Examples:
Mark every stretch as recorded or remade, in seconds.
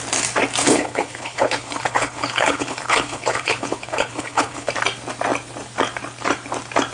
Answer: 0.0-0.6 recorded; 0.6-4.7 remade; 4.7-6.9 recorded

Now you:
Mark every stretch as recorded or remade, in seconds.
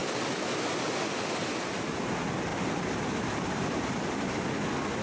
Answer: 0.0-2.5 recorded; 2.5-4.4 remade; 4.4-5.0 recorded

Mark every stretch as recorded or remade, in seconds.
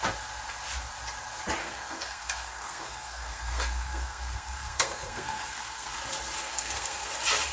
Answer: 0.0-1.6 recorded; 1.6-6.0 remade; 6.0-6.4 recorded; 6.4-7.1 remade; 7.1-7.5 recorded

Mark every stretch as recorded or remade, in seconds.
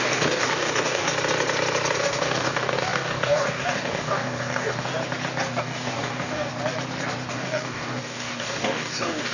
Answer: 0.0-1.1 remade; 1.1-2.0 recorded; 2.0-4.9 remade; 4.9-5.6 recorded; 5.6-6.5 remade; 6.5-7.3 recorded; 7.3-9.3 remade